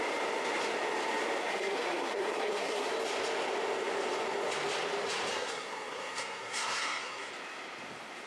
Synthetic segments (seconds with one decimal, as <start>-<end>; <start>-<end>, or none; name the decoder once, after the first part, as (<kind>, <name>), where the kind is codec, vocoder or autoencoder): 1.4-2.9 (codec, SNAC); 5.3-7.3